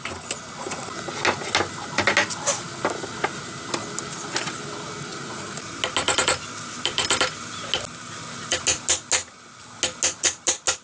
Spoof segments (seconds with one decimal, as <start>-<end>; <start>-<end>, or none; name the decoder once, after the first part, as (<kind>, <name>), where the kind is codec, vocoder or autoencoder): 5.1-5.6 (vocoder, Vocos)